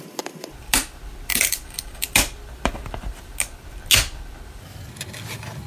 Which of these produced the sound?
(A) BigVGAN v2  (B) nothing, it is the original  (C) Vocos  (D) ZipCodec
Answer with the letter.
B